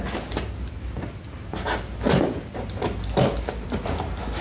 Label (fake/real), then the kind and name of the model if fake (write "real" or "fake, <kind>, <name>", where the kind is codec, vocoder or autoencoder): real